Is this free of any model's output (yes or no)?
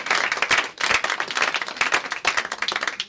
yes